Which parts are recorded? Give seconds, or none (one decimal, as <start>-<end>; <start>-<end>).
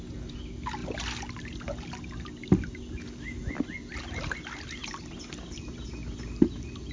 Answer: 0.0-6.9